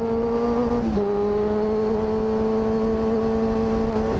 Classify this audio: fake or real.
real